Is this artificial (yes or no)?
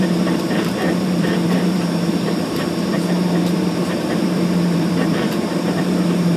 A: yes